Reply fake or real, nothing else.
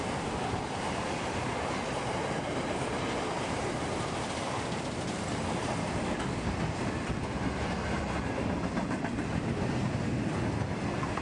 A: real